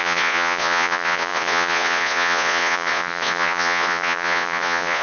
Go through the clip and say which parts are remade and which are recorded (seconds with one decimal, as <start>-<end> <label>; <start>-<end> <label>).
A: 0.0-5.0 remade